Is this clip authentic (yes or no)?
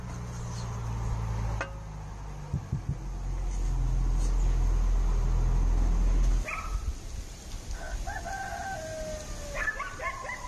yes